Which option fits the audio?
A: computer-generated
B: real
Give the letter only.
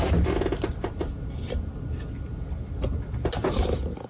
B